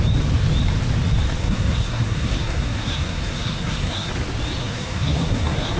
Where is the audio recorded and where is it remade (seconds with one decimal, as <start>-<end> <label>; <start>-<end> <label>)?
0.0-1.4 recorded; 1.4-4.1 remade; 4.1-4.6 recorded; 4.6-5.8 remade